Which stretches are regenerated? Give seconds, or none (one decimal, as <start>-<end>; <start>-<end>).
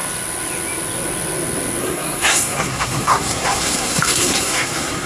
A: 1.8-5.1